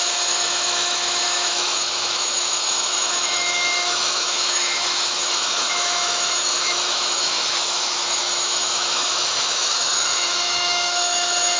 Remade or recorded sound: remade